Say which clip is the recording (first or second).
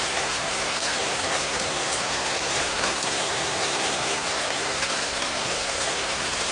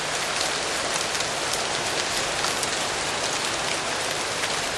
second